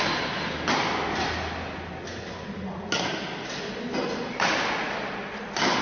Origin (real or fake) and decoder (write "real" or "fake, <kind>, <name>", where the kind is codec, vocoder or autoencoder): real